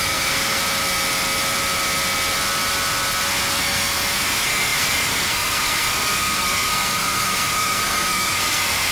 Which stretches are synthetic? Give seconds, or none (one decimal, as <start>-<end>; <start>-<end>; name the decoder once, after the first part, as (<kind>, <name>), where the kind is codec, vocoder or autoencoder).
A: 0.0-0.6 (codec, SNAC); 3.5-8.9